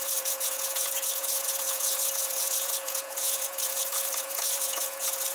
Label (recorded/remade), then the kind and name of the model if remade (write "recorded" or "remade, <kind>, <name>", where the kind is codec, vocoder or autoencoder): remade, vocoder, Vocos